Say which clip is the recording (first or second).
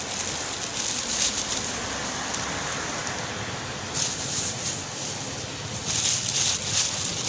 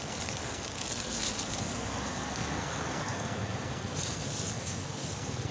first